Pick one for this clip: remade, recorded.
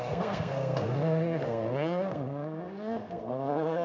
remade